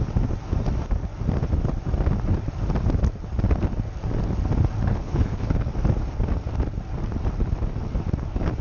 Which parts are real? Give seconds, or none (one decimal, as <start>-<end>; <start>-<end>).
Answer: 0.0-4.9; 5.6-8.6